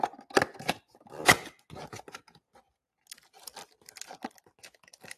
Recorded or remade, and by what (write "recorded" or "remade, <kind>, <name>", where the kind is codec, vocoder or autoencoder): recorded